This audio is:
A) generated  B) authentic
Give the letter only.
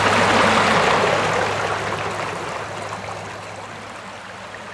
B